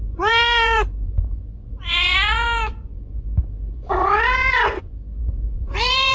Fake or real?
fake